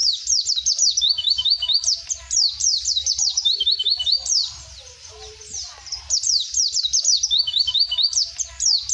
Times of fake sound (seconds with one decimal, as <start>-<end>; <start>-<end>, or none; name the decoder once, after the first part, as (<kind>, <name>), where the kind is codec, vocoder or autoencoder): 2.6-3.8 (vocoder, BigVGAN v2); 4.4-7.0